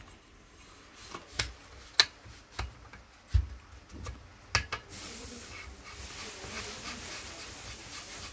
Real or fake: real